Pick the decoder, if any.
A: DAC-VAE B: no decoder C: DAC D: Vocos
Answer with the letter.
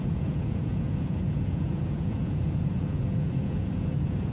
D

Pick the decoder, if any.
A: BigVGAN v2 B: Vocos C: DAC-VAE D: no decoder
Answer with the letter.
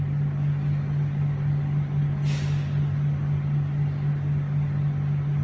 D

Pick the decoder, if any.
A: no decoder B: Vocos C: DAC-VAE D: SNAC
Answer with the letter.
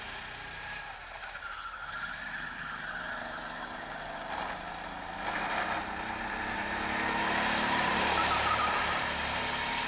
A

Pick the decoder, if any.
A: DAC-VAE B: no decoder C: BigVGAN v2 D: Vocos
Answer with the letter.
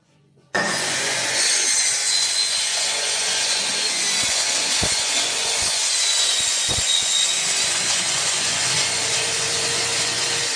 D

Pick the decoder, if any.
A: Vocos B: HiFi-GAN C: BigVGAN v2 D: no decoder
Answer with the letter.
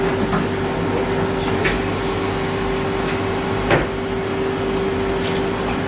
D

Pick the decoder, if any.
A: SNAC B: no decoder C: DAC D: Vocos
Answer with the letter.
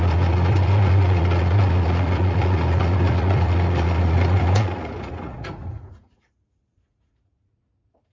D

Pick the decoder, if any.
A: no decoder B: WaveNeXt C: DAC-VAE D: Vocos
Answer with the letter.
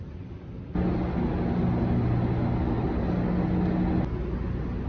A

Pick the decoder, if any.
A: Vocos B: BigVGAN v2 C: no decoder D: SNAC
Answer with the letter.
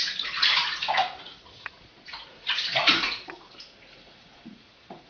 A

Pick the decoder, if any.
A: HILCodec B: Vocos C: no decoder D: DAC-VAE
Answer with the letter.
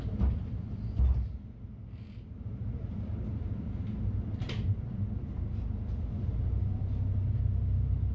C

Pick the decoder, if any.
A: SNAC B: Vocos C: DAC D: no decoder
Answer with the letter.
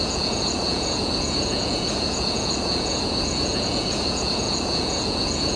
B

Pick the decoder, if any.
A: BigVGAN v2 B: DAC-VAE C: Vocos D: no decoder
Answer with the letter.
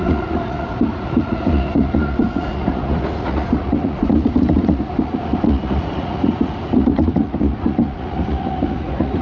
C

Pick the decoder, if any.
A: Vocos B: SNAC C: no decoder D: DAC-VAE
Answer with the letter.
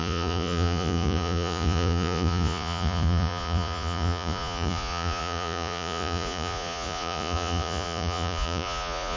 A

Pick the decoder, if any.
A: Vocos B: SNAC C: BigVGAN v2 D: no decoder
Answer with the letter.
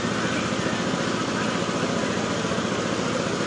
D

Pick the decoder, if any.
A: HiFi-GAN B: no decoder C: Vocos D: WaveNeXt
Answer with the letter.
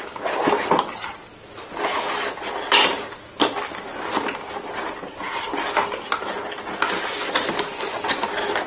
B